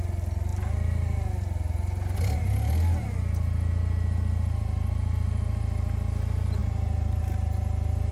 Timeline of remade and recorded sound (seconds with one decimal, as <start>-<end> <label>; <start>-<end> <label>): 0.0-8.1 recorded